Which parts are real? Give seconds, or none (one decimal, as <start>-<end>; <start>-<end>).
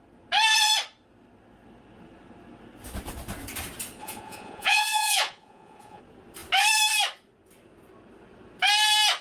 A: 0.0-4.0; 6.0-9.2